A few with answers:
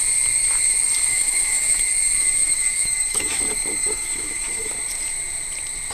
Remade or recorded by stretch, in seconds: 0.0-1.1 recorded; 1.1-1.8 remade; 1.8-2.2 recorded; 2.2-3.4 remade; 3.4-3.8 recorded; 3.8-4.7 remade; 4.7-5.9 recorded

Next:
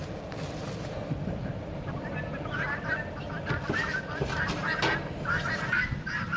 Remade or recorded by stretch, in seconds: 0.0-6.4 recorded

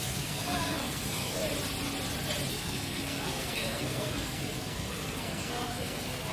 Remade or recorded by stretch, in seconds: 0.0-1.4 remade; 1.4-2.5 recorded; 2.5-6.3 remade

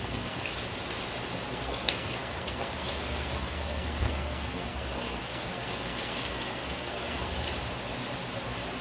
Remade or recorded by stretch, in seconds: 0.0-0.5 remade; 0.5-1.5 recorded; 1.5-7.3 remade; 7.3-8.8 recorded

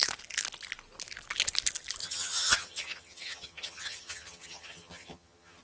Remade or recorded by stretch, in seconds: 0.0-2.0 recorded; 2.0-5.6 remade